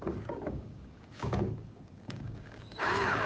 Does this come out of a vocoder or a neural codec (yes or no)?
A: yes